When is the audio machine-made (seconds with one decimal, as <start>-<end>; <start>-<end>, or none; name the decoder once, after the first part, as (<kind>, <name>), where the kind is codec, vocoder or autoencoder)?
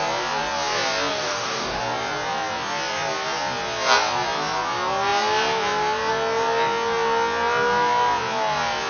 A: 1.1-1.8 (codec, DAC)